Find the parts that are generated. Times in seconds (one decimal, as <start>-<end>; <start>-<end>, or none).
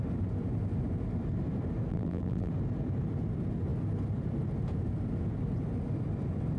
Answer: 1.9-2.5